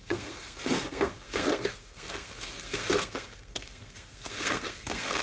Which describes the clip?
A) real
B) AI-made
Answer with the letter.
B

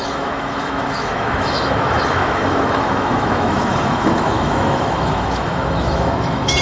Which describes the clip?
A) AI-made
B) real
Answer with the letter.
A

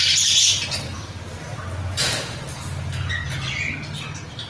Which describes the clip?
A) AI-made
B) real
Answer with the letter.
B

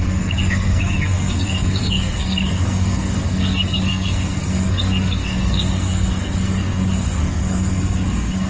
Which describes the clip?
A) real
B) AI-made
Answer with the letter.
B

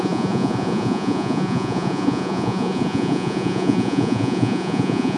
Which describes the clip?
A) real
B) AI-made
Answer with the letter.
B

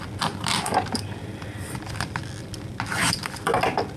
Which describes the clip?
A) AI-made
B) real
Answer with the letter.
B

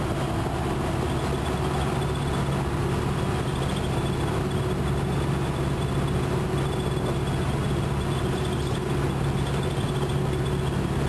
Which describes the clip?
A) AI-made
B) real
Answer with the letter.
B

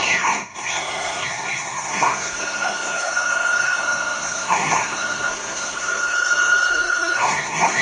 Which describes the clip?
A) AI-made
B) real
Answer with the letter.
A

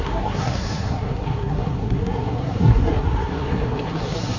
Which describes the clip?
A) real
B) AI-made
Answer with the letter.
B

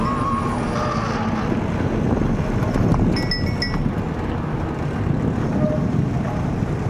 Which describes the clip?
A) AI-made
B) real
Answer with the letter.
B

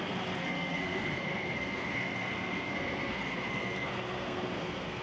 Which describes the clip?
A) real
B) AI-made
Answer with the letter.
B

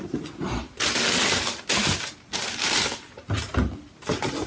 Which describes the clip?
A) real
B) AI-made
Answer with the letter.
A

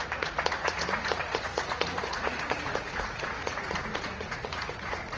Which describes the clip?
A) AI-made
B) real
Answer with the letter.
A